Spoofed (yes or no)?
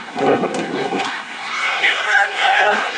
yes